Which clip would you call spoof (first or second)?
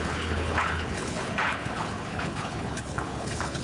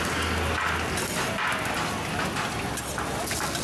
first